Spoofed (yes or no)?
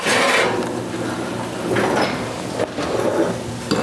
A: no